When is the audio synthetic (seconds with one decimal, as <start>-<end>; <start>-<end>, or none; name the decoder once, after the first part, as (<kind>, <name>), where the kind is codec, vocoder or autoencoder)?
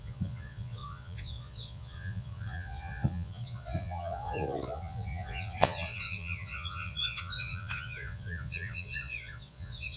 0.0-10.0 (vocoder, Vocos)